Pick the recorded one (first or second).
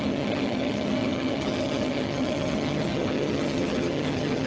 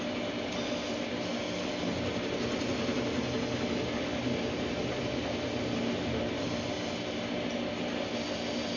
second